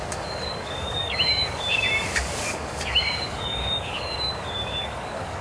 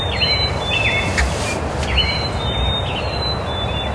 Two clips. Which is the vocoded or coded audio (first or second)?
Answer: first